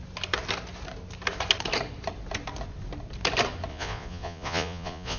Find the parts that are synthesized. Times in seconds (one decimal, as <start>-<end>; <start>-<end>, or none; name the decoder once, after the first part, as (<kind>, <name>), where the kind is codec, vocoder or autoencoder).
3.7-5.2 (vocoder, Vocos)